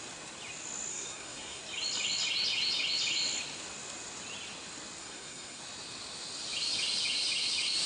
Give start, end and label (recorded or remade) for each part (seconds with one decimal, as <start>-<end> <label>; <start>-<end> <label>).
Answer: 0.0-0.9 recorded; 0.9-1.6 remade; 1.6-5.0 recorded; 5.0-5.6 remade; 5.6-7.9 recorded